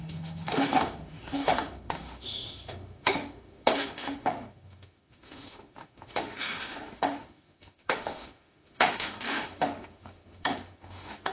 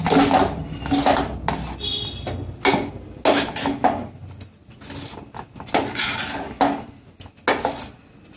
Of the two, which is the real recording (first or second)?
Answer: second